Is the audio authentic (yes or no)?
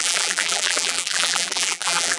no